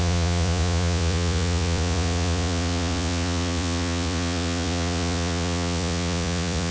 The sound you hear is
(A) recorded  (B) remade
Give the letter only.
B